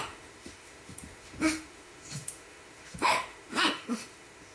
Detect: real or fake fake